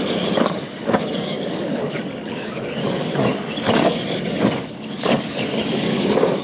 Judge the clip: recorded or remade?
remade